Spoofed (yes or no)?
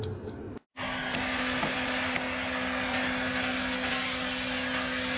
no